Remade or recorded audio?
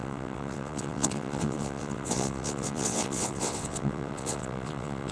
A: remade